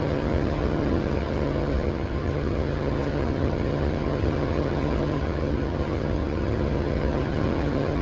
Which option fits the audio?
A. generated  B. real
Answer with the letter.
A